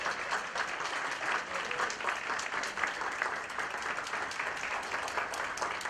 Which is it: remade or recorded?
recorded